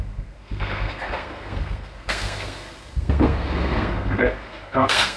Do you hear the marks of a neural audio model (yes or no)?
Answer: yes